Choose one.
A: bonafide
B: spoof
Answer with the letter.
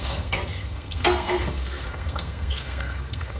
B